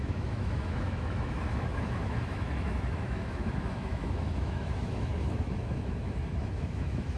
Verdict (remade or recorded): remade